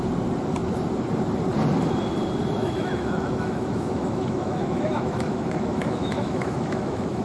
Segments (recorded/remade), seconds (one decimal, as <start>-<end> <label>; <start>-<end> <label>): 0.0-2.6 recorded; 2.6-7.2 remade